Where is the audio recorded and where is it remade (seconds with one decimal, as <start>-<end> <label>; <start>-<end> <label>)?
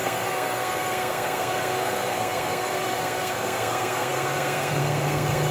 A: 0.0-5.5 remade